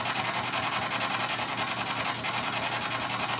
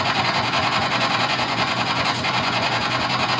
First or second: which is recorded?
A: first